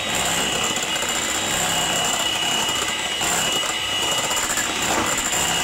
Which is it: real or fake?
real